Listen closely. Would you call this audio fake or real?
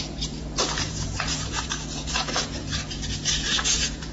fake